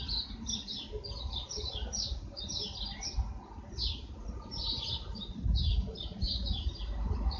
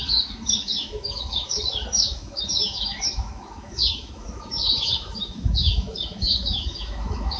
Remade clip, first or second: second